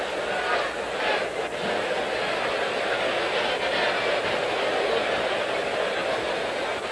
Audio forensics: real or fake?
real